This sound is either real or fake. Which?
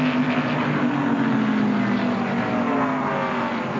real